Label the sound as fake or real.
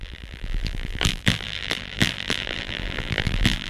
fake